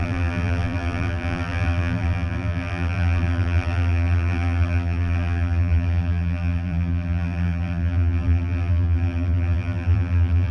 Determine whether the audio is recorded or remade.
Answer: remade